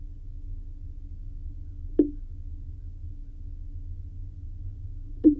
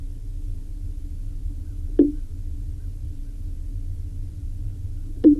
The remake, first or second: second